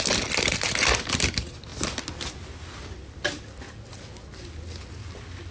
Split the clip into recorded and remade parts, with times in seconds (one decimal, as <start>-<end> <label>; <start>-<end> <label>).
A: 0.0-5.5 recorded